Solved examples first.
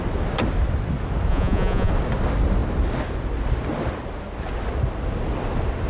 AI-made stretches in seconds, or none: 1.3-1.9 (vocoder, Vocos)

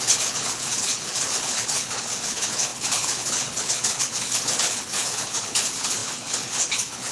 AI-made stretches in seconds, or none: 0.0-7.1 (codec, HILCodec)

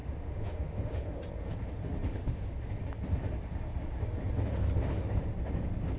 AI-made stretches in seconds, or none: 0.0-1.2 (autoencoder, DAC-VAE); 2.1-2.8

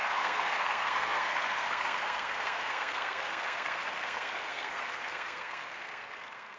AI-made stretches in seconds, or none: 0.0-6.6 (codec, SNAC)

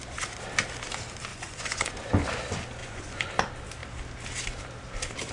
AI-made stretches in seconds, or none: 1.3-2.1 (vocoder, Vocos); 2.8-3.3